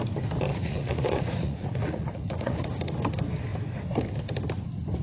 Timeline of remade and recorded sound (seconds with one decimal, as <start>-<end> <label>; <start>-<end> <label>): 0.0-0.5 recorded; 0.5-2.8 remade; 2.8-5.0 recorded